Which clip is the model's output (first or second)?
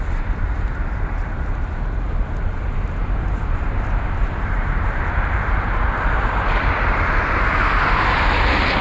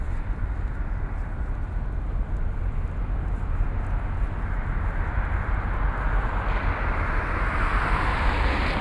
first